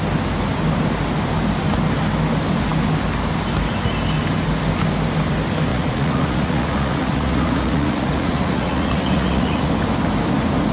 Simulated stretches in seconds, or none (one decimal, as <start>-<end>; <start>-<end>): 5.7-9.7